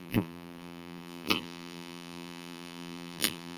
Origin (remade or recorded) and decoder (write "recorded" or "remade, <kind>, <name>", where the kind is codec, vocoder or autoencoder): remade, vocoder, BigVGAN v2